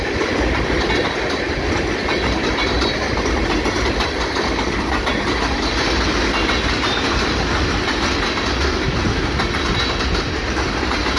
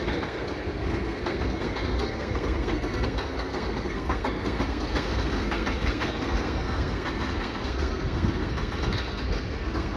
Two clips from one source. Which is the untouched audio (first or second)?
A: first